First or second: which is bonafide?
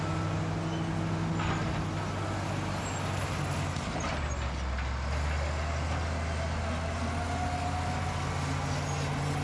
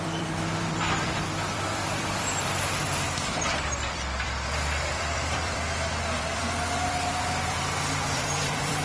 first